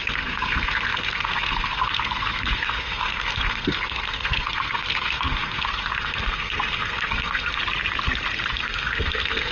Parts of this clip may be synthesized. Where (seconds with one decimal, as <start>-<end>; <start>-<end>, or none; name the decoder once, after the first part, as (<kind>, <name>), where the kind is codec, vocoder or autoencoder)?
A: 0.0-7.6 (codec, SNAC); 8.5-9.5